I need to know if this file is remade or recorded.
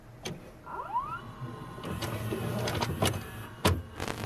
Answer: recorded